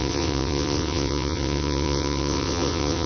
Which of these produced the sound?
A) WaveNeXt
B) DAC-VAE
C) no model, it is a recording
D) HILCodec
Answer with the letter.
A